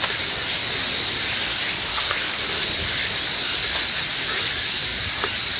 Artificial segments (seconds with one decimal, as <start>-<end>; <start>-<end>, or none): 1.8-2.4

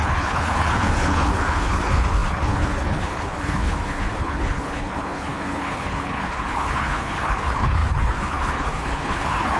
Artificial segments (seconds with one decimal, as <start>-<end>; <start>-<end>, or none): 0.0-9.6

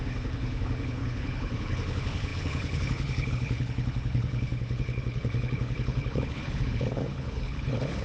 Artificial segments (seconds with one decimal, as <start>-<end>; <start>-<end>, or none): 0.0-8.0

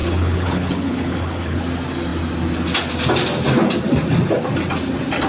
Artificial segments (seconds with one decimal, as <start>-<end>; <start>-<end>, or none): 0.0-1.6

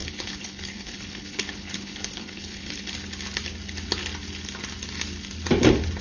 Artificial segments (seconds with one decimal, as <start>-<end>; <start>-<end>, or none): 0.0-2.9

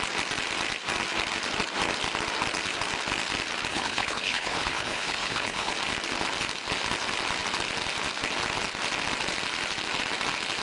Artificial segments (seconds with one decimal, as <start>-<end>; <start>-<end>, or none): 3.7-5.7